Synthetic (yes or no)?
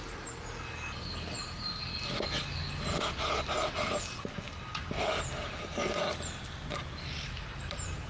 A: no